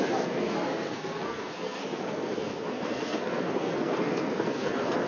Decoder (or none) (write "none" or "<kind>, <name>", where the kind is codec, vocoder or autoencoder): codec, SNAC